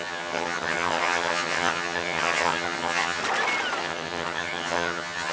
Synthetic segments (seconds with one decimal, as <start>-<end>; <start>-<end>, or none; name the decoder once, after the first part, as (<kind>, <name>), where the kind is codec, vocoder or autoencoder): 0.0-3.2 (vocoder, HiFi-GAN); 3.8-5.3